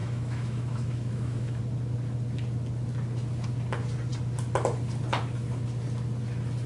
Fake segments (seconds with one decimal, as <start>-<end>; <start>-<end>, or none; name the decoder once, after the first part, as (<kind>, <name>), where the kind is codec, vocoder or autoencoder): 0.0-1.6 (autoencoder, DAC-VAE)